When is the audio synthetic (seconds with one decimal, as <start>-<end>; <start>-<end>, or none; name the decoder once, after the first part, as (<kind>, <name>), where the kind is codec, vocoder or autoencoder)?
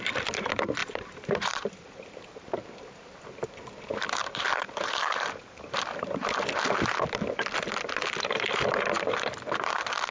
0.8-1.8 (vocoder, BigVGAN v2)